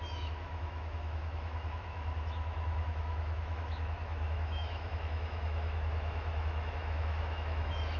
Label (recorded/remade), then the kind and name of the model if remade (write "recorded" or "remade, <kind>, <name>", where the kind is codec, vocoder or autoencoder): remade, autoencoder, DAC-VAE